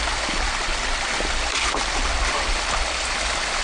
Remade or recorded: recorded